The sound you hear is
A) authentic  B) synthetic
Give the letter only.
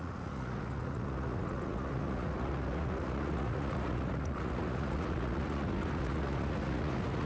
B